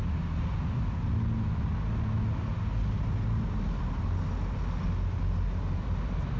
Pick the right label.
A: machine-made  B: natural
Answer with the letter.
B